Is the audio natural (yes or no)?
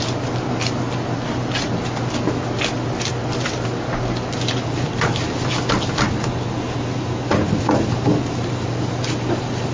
yes